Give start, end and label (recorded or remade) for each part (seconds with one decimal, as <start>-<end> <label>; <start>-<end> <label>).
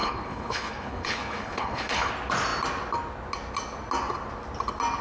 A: 0.0-2.1 remade; 2.1-5.0 recorded